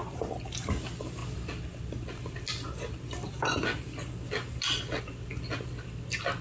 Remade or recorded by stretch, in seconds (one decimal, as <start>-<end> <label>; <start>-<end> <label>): 0.0-6.4 recorded